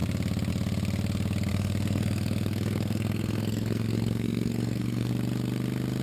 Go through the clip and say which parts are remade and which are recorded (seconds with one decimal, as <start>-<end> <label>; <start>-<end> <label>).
0.0-1.5 recorded; 1.5-5.1 remade; 5.1-6.0 recorded